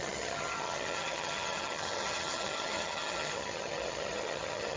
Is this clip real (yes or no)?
no